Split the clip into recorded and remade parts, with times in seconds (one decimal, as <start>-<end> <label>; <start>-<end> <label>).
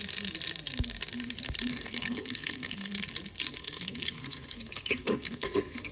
0.0-1.7 recorded; 1.7-2.9 remade; 2.9-3.6 recorded; 3.6-5.9 remade